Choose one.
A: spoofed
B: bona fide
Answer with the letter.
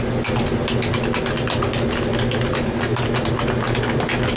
B